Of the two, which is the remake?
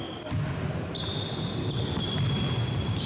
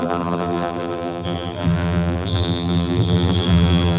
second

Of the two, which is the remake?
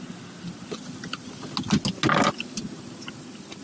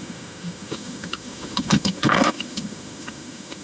second